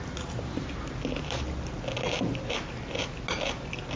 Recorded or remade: recorded